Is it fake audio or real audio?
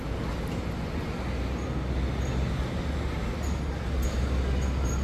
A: real